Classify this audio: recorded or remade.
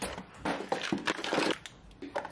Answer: recorded